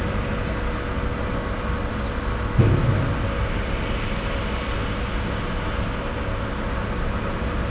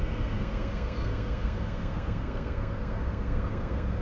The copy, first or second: second